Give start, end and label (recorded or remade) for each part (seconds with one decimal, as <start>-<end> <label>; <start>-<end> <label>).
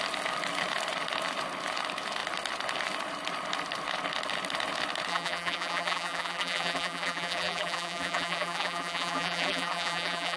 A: 0.0-5.1 recorded; 5.1-10.4 remade